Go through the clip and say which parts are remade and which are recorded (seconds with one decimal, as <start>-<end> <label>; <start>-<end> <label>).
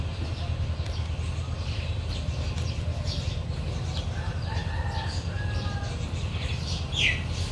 0.0-7.5 recorded